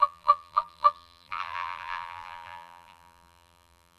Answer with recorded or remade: remade